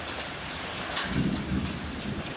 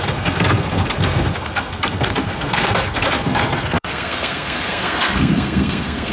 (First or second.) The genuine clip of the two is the first